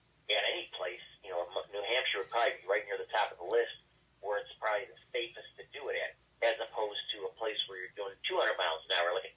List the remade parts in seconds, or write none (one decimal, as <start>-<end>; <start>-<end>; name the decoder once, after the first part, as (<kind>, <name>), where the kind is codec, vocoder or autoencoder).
none